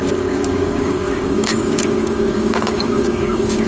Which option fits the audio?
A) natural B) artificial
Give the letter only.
B